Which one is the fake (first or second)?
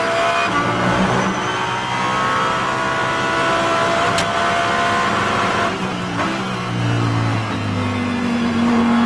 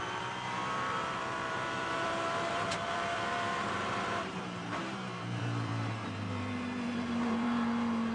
second